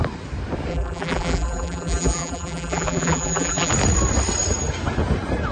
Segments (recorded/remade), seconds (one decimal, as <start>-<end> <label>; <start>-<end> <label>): 0.0-0.7 recorded; 0.7-3.7 remade; 3.7-5.5 recorded